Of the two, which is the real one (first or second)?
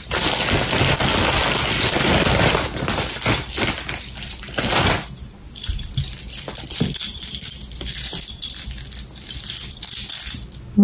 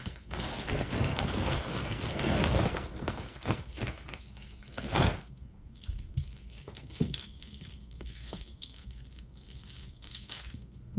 first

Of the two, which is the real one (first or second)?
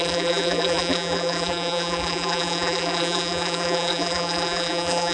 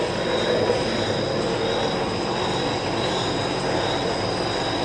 second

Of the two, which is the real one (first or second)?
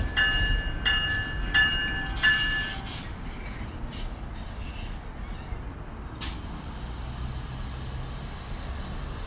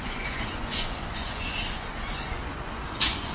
first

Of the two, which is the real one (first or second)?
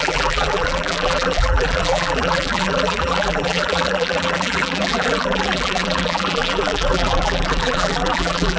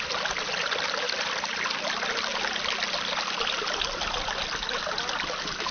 second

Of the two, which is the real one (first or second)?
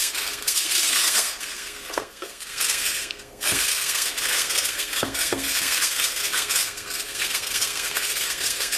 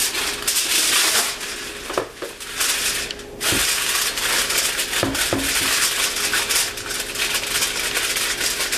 second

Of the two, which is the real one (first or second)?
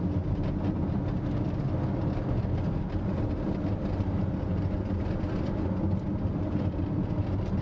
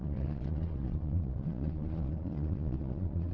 first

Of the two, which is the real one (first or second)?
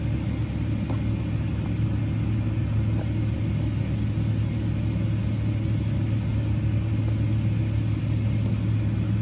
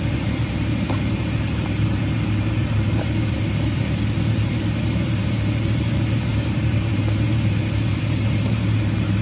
first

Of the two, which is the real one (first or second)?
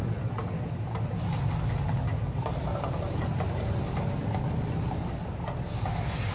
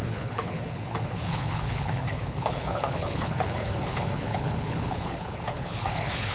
first